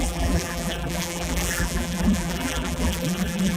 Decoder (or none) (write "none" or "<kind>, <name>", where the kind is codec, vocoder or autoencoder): vocoder, BigVGAN v2